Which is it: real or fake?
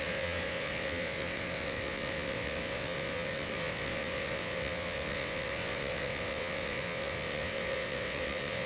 fake